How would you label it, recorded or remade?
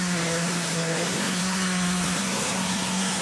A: remade